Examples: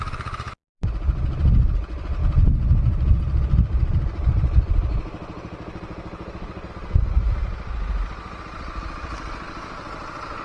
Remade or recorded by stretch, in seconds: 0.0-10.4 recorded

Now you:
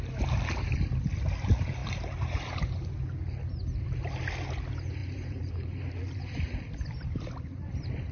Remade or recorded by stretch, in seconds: 0.0-1.8 recorded; 1.8-2.4 remade; 2.4-5.0 recorded; 5.0-5.8 remade; 5.8-8.1 recorded

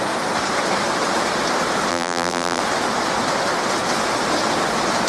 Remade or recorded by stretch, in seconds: 0.0-1.9 recorded; 1.9-2.6 remade; 2.6-5.1 recorded

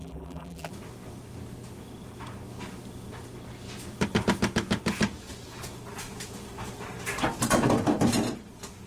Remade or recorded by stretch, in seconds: 0.0-0.7 remade; 0.7-8.9 recorded

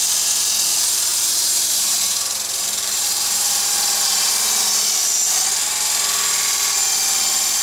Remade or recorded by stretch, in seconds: 0.0-1.1 recorded; 1.1-4.6 remade; 4.6-7.6 recorded

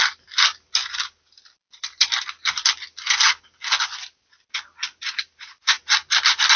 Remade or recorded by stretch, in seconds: 0.0-5.0 recorded; 5.0-5.8 remade; 5.8-6.6 recorded

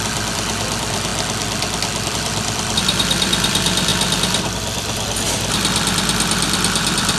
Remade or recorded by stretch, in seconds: 0.0-1.1 remade; 1.1-2.1 recorded; 2.1-7.2 remade

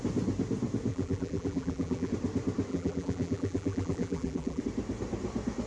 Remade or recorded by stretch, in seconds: 0.0-0.9 recorded; 0.9-2.1 remade; 2.1-2.7 recorded; 2.7-4.6 remade; 4.6-5.7 recorded